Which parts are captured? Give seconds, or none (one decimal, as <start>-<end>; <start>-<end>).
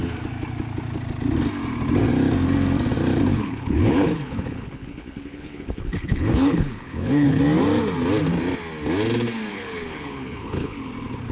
0.0-3.3; 7.4-9.5; 10.9-11.3